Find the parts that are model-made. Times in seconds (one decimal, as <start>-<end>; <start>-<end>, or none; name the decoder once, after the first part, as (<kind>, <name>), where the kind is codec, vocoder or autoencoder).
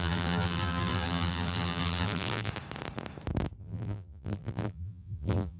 0.0-2.5 (vocoder, BigVGAN v2); 3.6-5.6